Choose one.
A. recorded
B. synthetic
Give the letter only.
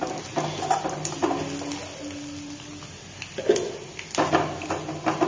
A